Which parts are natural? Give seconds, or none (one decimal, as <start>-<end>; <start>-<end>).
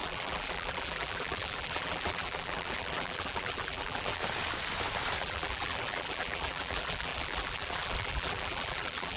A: 4.2-5.2